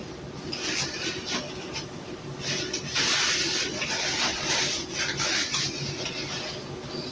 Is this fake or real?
real